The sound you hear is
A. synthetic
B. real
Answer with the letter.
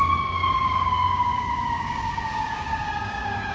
A